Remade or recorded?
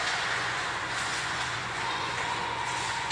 remade